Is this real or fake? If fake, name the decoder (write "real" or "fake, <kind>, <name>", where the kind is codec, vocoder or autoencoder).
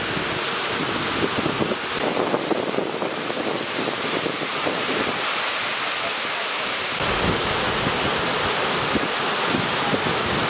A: real